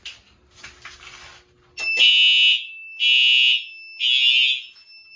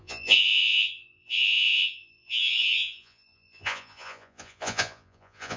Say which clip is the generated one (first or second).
second